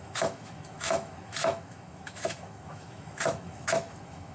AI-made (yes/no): yes